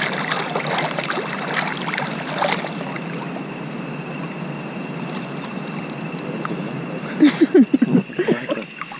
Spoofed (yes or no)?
no